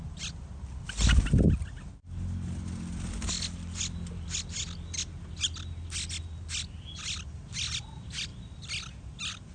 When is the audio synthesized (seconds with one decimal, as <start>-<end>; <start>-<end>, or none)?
none